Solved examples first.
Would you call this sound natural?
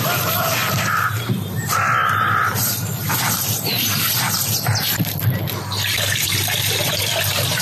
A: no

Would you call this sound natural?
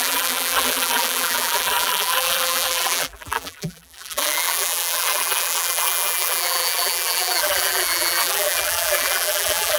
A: no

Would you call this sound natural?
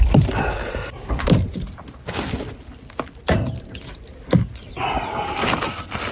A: yes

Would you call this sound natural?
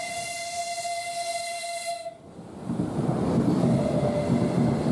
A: yes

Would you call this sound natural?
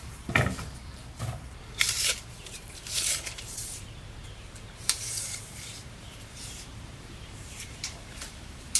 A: no